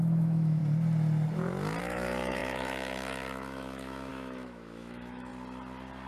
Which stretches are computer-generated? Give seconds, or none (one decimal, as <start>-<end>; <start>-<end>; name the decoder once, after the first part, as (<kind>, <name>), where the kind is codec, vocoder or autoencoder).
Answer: 0.0-0.6 (autoencoder, DAC-VAE); 1.8-5.3